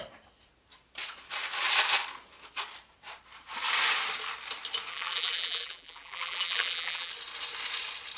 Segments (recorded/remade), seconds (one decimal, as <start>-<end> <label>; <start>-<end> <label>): 0.0-4.9 recorded; 4.9-7.1 remade; 7.1-8.2 recorded